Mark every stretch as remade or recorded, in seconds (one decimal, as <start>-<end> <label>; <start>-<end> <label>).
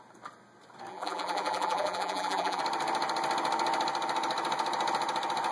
0.0-0.9 recorded; 0.9-2.6 remade; 2.6-5.5 recorded